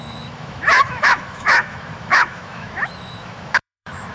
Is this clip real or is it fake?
fake